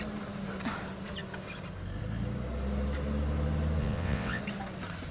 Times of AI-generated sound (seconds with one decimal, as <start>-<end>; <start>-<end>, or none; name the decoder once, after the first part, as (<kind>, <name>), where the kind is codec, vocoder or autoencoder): 3.8-4.4 (vocoder, WaveNeXt)